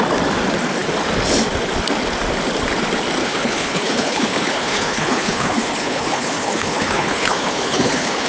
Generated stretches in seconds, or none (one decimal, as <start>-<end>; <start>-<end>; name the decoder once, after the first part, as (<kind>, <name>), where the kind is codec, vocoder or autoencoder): 3.2-8.3 (codec, HILCodec)